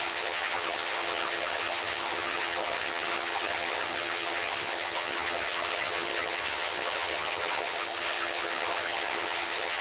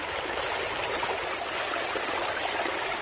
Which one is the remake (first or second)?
first